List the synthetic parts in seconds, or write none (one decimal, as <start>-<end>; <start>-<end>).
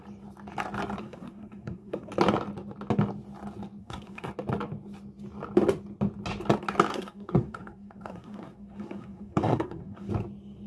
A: 1.0-2.1; 3.8-4.3; 6.9-10.1